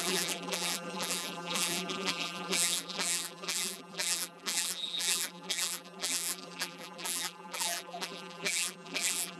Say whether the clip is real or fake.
fake